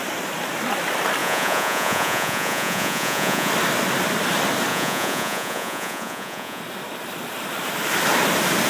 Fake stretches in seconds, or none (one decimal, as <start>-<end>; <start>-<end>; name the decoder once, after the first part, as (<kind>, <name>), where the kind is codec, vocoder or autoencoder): 1.2-3.5 (vocoder, Vocos); 4.7-6.6